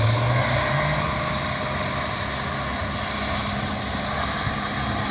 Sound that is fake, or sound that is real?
real